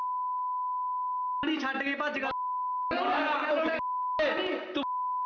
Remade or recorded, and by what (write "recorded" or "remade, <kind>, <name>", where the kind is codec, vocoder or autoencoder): recorded